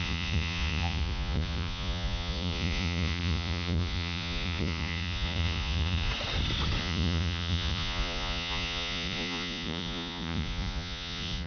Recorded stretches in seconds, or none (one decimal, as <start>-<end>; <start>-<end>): 6.1-6.8

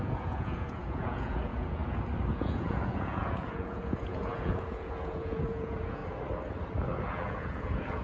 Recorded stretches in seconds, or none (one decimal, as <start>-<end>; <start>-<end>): 1.8-2.3; 6.0-7.0

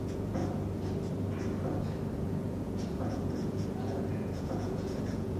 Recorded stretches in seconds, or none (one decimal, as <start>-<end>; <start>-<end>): 0.4-2.2

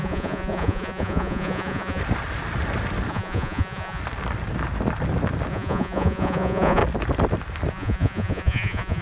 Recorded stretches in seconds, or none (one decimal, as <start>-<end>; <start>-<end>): 2.0-3.1; 4.0-5.5; 6.8-7.7

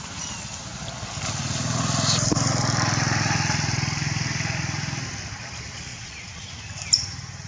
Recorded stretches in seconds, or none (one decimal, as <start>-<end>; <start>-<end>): 0.0-5.9; 6.5-7.5

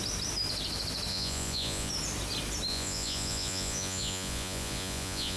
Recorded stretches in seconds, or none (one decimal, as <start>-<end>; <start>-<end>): 0.0-1.1; 1.9-2.7